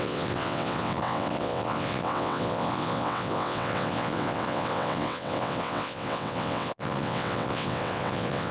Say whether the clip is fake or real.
fake